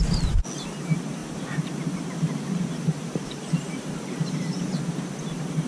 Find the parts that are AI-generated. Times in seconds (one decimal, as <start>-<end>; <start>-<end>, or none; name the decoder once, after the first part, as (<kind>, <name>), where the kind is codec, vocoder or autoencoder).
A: 1.2-4.6 (vocoder, BigVGAN v2)